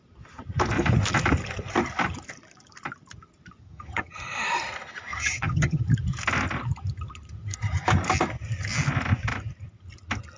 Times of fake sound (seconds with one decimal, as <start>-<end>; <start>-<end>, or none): 3.6-4.1; 5.1-5.8